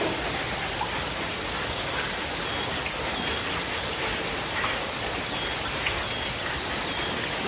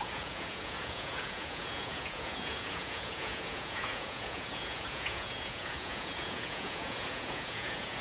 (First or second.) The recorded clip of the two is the first